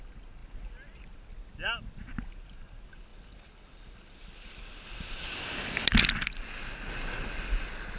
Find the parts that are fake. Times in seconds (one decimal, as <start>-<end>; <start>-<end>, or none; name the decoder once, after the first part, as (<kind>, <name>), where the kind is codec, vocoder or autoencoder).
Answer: none